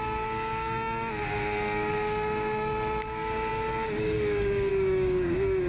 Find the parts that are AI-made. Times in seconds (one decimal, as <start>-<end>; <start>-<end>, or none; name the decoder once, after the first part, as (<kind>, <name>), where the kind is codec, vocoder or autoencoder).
0.0-5.7 (codec, DAC)